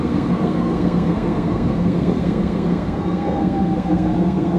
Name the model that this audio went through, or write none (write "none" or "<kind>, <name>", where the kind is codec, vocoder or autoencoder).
codec, SNAC